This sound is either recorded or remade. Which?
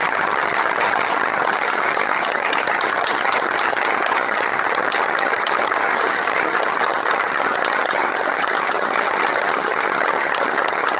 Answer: remade